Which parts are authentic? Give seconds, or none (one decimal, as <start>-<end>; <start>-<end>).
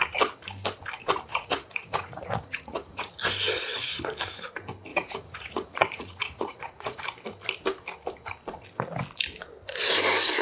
0.0-1.3; 3.1-4.9; 7.0-10.4